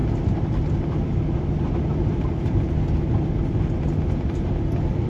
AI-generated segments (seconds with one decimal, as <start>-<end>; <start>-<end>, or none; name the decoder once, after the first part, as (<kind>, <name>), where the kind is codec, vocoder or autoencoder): none